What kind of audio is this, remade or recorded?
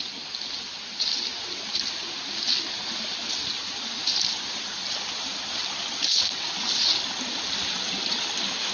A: recorded